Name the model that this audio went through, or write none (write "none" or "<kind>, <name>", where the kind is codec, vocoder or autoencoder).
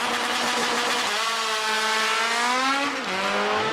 none